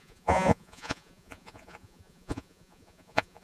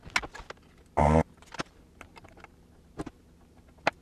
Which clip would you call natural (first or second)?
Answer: second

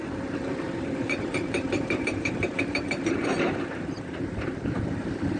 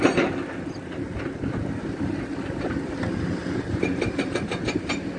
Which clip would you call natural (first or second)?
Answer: second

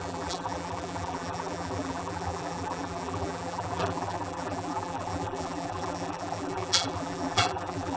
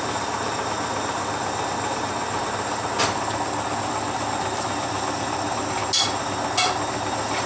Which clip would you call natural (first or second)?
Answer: second